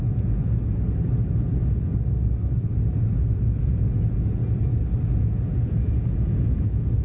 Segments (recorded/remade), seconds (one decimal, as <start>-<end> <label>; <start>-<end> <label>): 0.0-0.7 remade; 0.7-3.6 recorded; 3.6-4.4 remade; 4.4-5.2 recorded; 5.2-7.0 remade